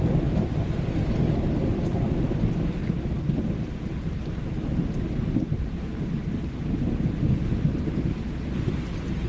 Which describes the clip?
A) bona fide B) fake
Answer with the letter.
A